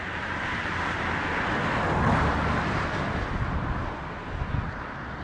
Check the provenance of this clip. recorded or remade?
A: recorded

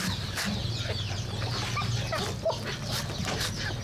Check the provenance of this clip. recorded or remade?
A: recorded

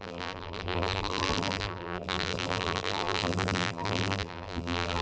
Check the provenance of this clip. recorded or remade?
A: remade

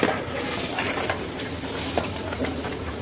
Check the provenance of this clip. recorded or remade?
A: remade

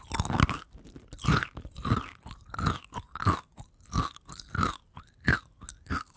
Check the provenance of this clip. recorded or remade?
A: recorded